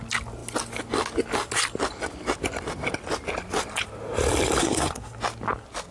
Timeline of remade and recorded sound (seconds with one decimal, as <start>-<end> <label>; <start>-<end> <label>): 0.0-4.6 recorded; 4.6-5.2 remade; 5.2-5.9 recorded